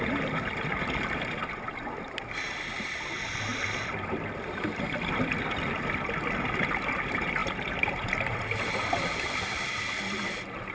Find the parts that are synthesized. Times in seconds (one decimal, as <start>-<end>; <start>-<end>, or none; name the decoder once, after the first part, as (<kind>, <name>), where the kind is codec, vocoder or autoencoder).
7.4-9.3 (vocoder, BigVGAN v2)